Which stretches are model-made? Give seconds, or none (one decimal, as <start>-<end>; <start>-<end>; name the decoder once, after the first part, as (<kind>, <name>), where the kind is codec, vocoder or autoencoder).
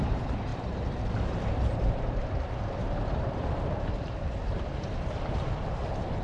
0.0-6.2 (vocoder, BigVGAN v2)